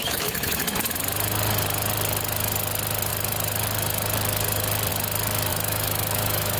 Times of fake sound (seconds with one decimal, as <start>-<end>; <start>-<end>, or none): 0.0-1.0; 5.5-6.6